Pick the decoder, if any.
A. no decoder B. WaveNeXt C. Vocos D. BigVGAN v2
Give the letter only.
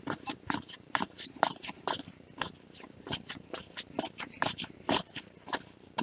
D